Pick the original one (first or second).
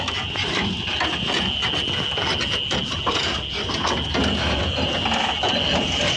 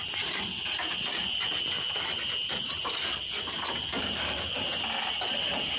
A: first